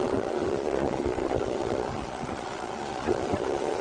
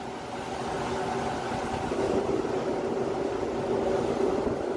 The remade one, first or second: first